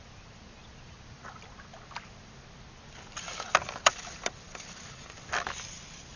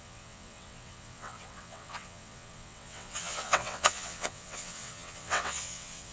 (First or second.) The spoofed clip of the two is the second